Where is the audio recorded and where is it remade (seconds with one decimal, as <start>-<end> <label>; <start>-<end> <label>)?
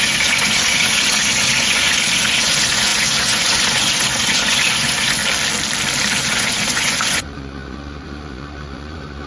0.0-5.2 remade; 5.2-6.1 recorded; 6.1-9.3 remade